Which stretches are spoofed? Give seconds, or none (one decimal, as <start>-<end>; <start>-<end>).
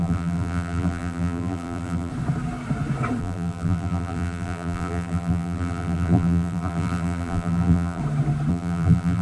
0.0-2.1; 3.2-8.0; 8.5-9.2